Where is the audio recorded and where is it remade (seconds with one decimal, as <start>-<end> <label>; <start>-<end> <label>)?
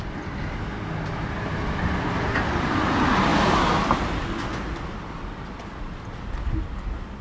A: 0.0-7.2 recorded